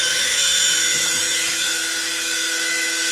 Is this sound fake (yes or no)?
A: yes